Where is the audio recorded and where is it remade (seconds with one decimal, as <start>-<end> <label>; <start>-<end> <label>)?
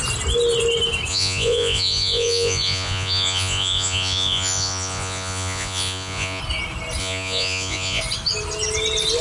0.0-1.1 recorded; 1.1-6.4 remade; 6.4-7.0 recorded; 7.0-8.0 remade; 8.0-9.2 recorded